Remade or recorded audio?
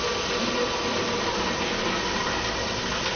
recorded